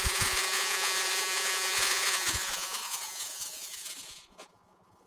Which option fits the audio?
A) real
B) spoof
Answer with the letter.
B